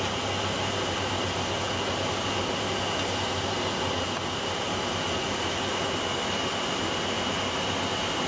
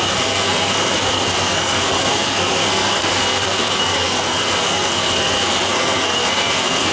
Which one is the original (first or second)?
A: first